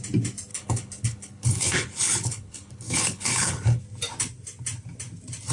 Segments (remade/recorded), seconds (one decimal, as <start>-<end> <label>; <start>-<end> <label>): 0.0-0.5 recorded; 0.5-3.8 remade; 3.8-5.5 recorded